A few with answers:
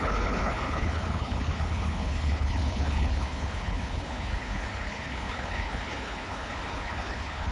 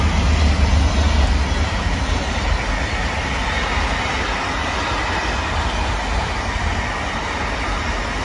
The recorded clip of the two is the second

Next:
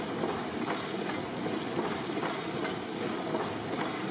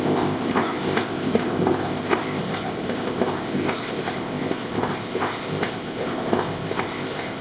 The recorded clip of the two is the first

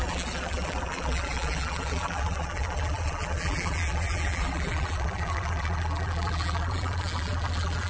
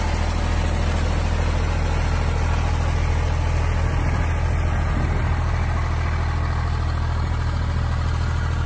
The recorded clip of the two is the second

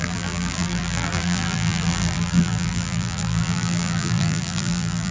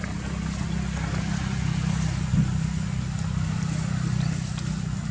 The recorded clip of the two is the second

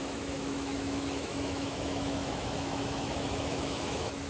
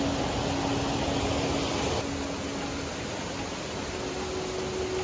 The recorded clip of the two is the second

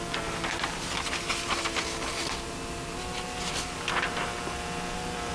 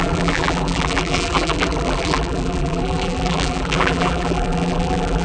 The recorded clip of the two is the first